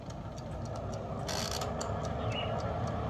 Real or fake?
real